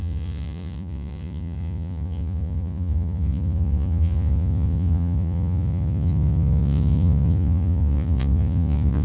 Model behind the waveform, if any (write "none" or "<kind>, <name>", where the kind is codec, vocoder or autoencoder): vocoder, Vocos